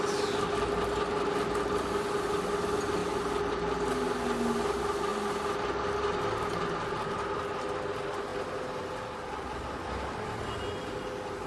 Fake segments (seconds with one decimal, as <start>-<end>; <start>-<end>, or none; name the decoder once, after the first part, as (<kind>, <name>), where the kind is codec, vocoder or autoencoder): none

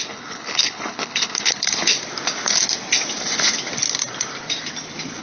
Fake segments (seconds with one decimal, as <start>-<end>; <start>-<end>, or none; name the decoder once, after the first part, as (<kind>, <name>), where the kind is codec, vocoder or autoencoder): 0.0-1.9 (codec, HILCodec)

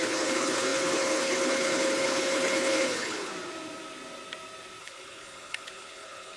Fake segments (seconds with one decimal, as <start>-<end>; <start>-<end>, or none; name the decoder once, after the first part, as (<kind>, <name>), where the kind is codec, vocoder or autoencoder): 0.0-3.3 (codec, HILCodec); 4.8-6.4

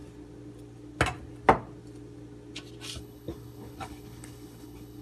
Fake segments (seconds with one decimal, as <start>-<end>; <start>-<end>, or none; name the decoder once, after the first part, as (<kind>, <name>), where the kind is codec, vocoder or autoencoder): 3.0-5.0 (codec, HILCodec)

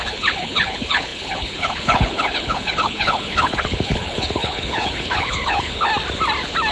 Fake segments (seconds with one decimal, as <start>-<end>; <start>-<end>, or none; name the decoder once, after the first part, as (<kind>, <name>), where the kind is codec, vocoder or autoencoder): 0.0-5.9 (codec, HILCodec)

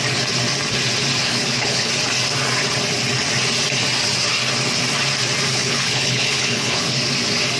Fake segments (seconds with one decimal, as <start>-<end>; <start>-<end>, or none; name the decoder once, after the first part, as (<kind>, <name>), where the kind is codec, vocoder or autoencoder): 1.2-1.9 (codec, HILCodec); 5.5-7.0